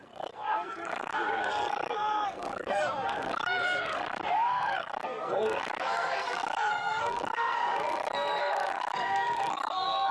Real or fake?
fake